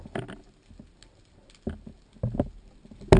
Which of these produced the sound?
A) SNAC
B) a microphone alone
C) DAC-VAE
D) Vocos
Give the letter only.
B